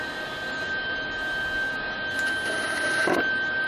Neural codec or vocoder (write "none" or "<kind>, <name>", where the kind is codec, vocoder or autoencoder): none